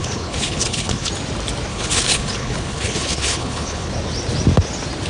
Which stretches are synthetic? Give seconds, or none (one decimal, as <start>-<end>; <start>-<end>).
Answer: 0.0-1.1; 1.7-3.9